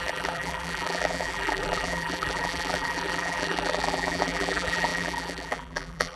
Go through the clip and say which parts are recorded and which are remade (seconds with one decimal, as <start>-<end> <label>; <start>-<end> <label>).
0.0-6.2 remade